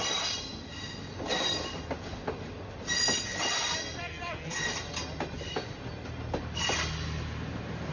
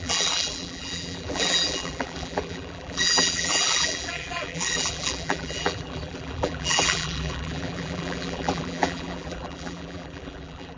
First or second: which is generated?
second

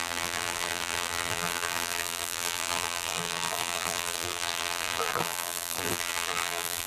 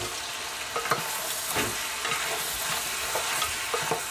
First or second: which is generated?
first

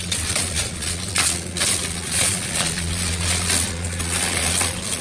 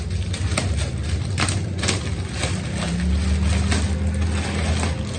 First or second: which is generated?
first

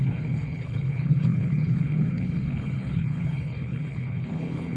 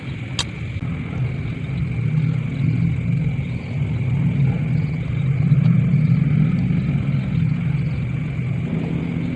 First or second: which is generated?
first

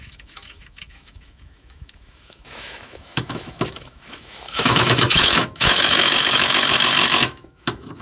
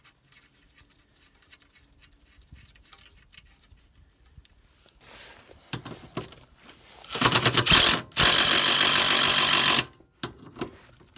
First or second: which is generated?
first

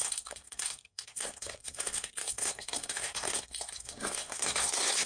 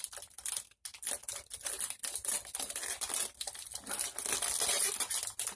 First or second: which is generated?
first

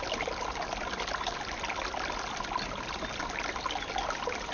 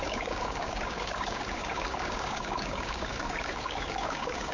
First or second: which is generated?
second